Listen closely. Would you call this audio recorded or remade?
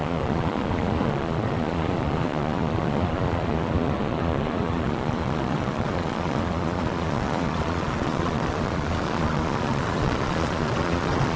remade